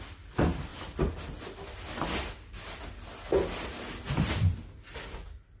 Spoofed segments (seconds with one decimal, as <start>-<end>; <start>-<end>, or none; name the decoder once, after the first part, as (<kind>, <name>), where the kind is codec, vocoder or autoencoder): 0.0-0.7 (vocoder, BigVGAN v2); 4.1-5.6